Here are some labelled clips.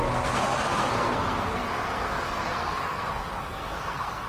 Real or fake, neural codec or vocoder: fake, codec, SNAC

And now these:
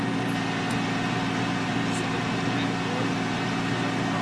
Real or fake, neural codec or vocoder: real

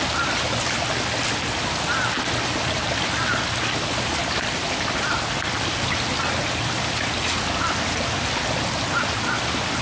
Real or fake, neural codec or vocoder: real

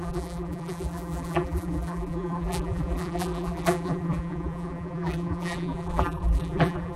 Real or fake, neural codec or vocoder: fake, vocoder, BigVGAN v2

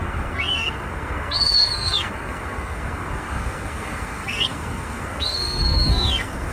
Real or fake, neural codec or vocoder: fake, codec, SNAC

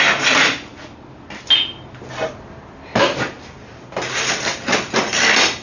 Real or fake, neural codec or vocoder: real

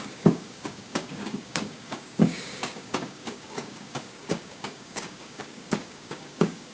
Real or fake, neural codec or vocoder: fake, codec, DAC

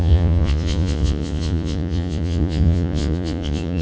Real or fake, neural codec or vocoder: fake, vocoder, Vocos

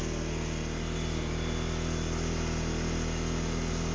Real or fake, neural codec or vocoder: real